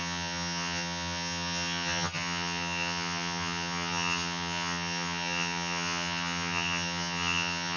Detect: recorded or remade remade